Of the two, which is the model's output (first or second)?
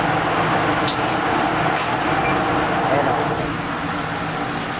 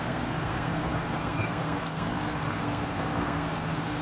second